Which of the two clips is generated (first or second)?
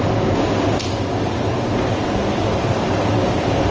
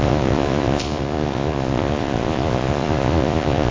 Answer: second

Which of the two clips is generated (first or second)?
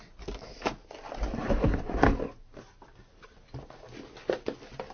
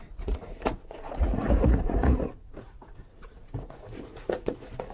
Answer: second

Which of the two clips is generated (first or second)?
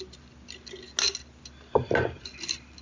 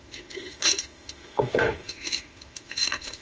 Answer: second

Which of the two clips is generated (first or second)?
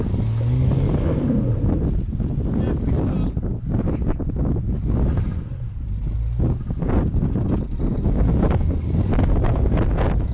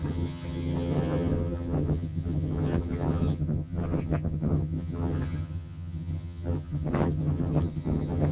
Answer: second